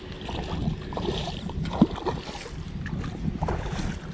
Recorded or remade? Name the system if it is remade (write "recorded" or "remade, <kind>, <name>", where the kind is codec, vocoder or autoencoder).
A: recorded